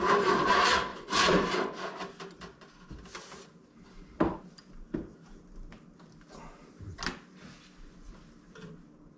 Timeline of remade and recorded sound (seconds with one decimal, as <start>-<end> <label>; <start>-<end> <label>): 0.0-0.9 recorded; 0.9-2.0 remade; 2.0-9.2 recorded